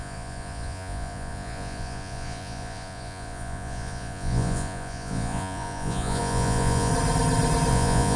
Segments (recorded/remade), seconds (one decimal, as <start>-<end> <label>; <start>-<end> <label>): 0.0-6.9 remade; 6.9-7.7 recorded; 7.7-8.2 remade